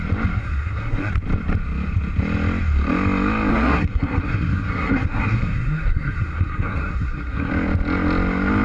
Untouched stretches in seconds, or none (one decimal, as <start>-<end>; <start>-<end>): 0.0-0.4; 1.1-3.5; 7.5-8.6